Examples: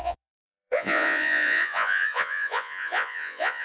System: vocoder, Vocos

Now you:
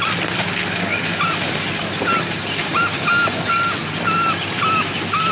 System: none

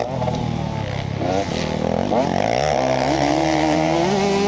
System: none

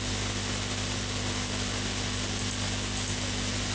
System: none